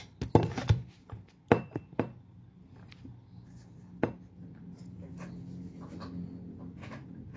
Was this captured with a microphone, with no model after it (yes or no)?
yes